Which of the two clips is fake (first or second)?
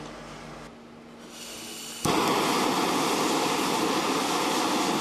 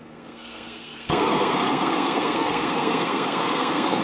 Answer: second